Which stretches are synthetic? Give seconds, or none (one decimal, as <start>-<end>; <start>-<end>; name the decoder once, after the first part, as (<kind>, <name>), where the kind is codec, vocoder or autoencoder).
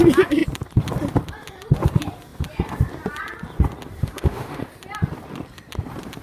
4.0-4.7 (autoencoder, DAC-VAE)